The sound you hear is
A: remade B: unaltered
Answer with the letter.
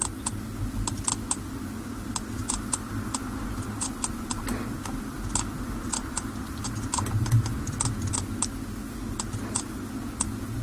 B